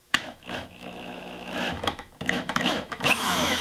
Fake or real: fake